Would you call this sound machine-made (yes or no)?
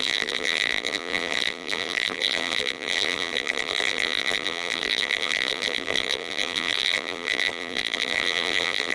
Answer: yes